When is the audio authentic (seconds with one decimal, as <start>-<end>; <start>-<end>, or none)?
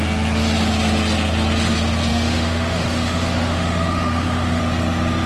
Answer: 0.0-2.1; 4.6-5.3